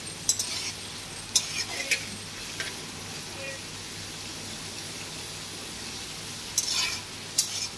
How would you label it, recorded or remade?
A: recorded